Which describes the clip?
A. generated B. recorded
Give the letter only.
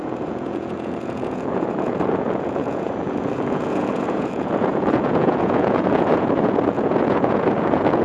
A